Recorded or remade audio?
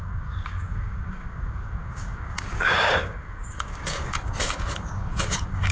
remade